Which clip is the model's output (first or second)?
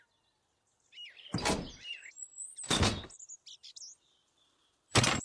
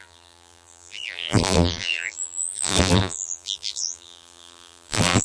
second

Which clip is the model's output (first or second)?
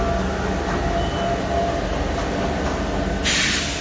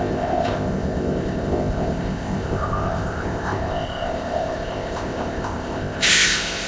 second